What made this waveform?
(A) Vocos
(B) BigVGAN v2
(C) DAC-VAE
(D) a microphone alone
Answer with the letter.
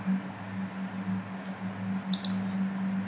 D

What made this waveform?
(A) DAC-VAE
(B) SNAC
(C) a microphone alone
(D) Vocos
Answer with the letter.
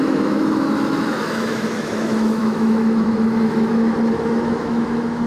A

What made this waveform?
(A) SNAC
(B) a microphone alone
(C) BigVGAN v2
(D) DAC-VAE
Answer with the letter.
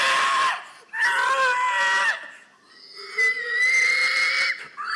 B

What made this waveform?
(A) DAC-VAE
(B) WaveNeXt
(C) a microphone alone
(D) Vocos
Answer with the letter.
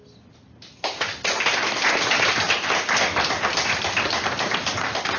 C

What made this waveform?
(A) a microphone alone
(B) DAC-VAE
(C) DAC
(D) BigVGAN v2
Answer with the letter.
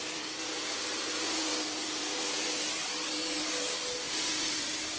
A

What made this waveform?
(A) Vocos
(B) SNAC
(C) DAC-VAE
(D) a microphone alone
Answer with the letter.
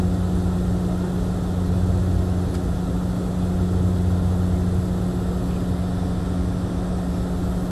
D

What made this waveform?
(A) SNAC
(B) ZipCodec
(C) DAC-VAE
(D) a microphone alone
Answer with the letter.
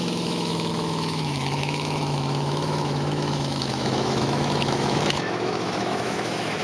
C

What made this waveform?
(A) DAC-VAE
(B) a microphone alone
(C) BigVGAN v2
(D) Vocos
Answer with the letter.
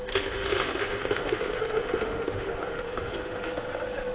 A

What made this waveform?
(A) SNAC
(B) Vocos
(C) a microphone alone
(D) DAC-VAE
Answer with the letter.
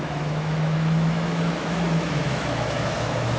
D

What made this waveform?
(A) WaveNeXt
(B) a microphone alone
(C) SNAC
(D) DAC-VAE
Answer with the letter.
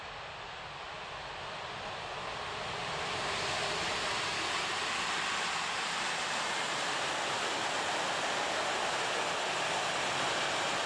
B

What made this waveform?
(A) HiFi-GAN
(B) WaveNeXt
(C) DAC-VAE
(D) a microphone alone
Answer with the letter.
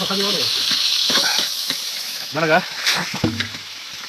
C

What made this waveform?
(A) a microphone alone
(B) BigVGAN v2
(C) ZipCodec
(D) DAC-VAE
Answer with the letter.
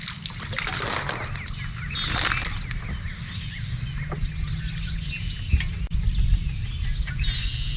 A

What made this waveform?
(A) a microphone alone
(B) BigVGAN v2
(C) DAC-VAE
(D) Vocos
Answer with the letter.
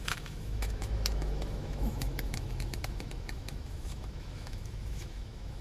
C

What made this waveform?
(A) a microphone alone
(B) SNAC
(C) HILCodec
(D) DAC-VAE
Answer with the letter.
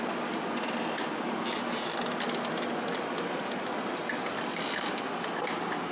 A